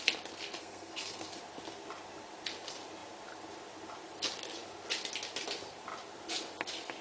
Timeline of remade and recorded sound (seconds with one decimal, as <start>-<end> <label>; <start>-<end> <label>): 0.0-0.6 recorded; 0.6-1.4 remade; 1.4-7.0 recorded